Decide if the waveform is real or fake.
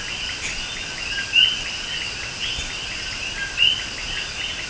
real